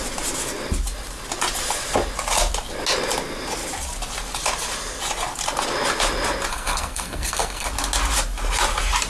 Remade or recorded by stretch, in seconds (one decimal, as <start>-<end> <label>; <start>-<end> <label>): 0.0-6.5 recorded; 6.5-7.7 remade; 7.7-9.1 recorded